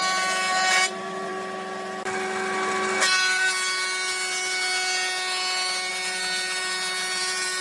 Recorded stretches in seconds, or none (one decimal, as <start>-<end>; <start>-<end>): 1.3-5.9